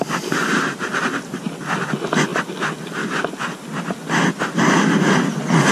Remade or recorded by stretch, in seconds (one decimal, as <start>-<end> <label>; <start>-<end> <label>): 0.0-5.7 recorded